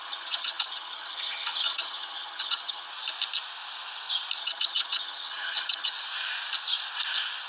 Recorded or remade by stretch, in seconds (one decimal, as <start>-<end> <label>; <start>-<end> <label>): 0.0-2.9 remade; 2.9-4.4 recorded; 4.4-5.9 remade; 5.9-7.5 recorded